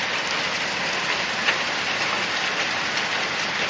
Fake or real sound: real